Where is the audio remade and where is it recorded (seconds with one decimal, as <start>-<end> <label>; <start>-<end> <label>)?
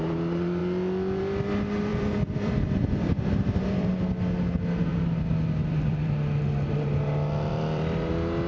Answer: 0.0-1.9 recorded; 1.9-3.9 remade; 3.9-4.9 recorded; 4.9-6.1 remade; 6.1-7.5 recorded; 7.5-8.1 remade; 8.1-8.5 recorded